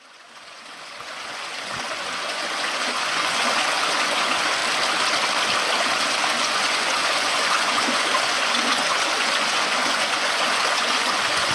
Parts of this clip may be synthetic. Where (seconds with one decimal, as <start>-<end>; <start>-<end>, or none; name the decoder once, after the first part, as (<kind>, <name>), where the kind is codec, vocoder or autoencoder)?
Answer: 0.0-4.6 (vocoder, Vocos); 5.8-11.5